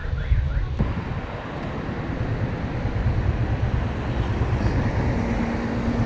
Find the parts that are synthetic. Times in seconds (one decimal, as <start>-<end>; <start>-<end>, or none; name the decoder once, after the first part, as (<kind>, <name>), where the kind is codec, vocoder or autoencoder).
none